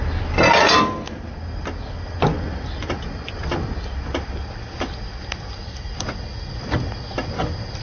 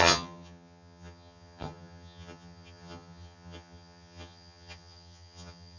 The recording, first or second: first